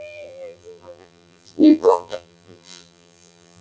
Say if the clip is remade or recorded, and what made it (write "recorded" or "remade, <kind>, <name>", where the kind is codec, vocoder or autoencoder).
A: remade, vocoder, BigVGAN v2